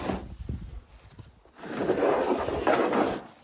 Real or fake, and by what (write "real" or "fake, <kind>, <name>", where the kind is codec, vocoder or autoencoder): real